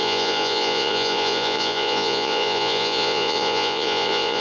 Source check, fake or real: fake